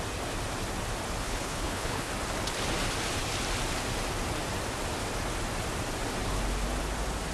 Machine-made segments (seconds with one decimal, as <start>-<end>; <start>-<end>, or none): 1.2-2.1